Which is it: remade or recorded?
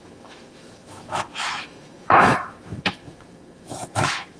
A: remade